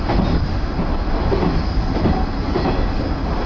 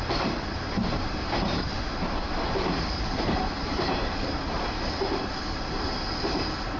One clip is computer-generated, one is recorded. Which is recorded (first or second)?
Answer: first